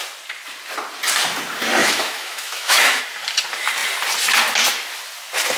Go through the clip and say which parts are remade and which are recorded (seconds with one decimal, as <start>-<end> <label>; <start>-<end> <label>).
0.0-1.8 recorded; 1.8-3.0 remade; 3.0-5.6 recorded